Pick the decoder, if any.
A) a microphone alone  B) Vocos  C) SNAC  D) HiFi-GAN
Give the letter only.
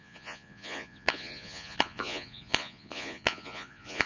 B